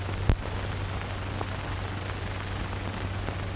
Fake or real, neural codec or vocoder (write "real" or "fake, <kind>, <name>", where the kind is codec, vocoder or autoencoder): real